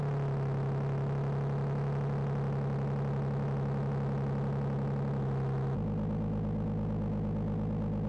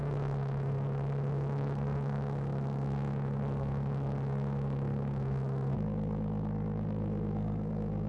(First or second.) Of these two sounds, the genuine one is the first